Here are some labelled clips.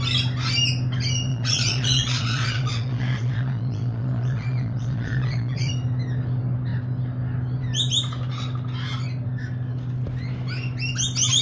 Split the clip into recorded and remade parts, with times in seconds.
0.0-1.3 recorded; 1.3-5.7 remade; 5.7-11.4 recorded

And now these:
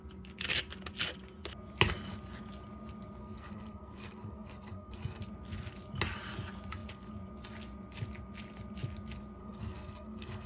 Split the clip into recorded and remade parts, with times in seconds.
0.0-3.2 recorded; 3.2-5.2 remade; 5.2-9.4 recorded; 9.4-10.5 remade

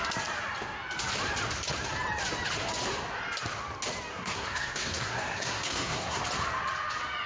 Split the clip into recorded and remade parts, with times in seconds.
0.0-4.1 recorded; 4.1-6.2 remade; 6.2-7.3 recorded

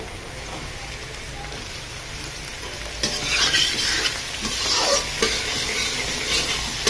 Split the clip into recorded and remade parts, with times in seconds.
0.0-6.9 recorded

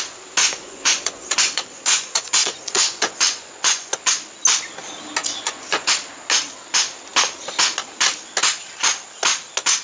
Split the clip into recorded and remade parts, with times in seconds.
0.0-0.4 recorded; 0.4-4.1 remade; 4.1-5.2 recorded; 5.2-5.9 remade; 5.9-9.8 recorded

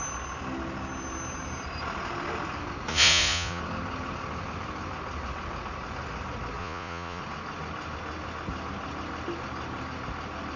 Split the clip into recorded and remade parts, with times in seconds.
0.0-2.9 recorded; 2.9-3.6 remade; 3.6-6.6 recorded; 6.6-7.2 remade; 7.2-10.6 recorded

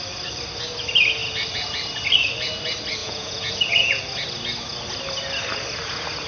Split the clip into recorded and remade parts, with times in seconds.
0.0-3.0 recorded; 3.0-4.0 remade; 4.0-6.3 recorded